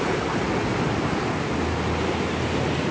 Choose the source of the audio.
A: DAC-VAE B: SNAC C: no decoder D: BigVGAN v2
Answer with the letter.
C